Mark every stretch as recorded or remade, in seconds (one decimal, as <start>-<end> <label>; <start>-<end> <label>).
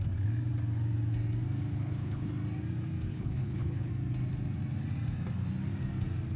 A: 0.0-1.7 recorded; 1.7-2.3 remade; 2.3-3.1 recorded; 3.1-3.9 remade; 3.9-6.4 recorded